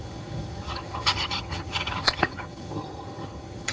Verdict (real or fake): fake